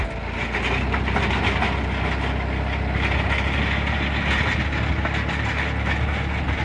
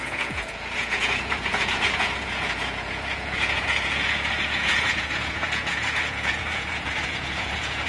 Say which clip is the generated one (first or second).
second